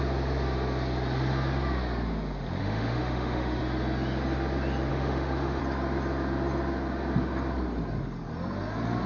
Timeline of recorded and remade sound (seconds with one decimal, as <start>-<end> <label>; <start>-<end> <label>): 0.0-2.6 recorded; 2.6-3.6 remade; 3.6-4.9 recorded; 4.9-5.6 remade; 5.6-9.1 recorded